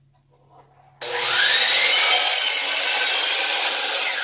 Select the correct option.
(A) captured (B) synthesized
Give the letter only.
A